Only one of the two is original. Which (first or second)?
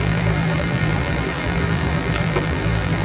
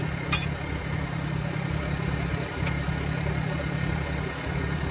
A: second